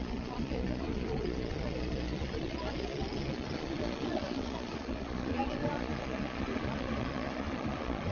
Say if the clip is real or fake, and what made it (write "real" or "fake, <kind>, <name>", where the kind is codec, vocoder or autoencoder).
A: fake, vocoder, Vocos